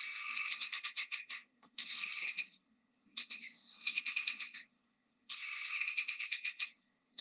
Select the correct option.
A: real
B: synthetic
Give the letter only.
B